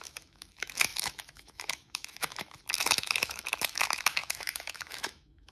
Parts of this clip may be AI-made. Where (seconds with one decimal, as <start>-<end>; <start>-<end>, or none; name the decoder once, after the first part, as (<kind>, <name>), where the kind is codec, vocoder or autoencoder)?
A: 0.0-5.5 (autoencoder, DAC-VAE)